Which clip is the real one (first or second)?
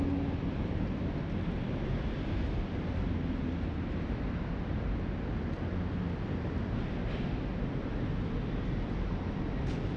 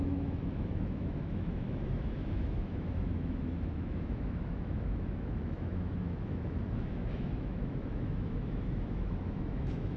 first